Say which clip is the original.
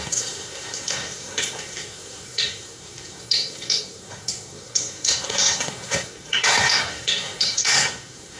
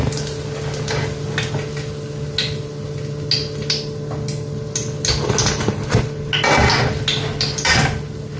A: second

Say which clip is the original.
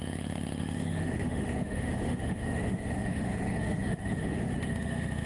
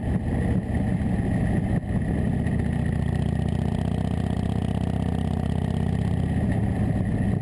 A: second